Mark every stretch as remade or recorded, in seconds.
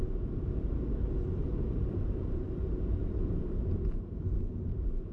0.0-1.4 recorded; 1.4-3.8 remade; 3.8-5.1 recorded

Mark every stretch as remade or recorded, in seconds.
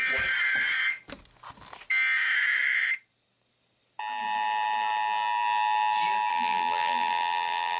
0.0-6.3 recorded; 6.3-7.8 remade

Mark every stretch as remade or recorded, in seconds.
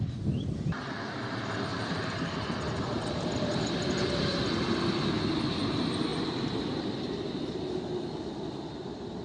0.0-1.7 recorded; 1.7-4.4 remade; 4.4-9.2 recorded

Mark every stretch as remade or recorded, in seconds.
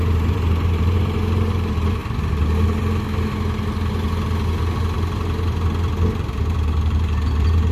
0.0-2.0 remade; 2.0-6.4 recorded; 6.4-7.7 remade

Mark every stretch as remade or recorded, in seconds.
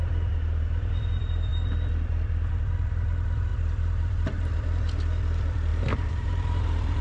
0.0-3.5 recorded; 3.5-4.5 remade; 4.5-5.7 recorded; 5.7-7.0 remade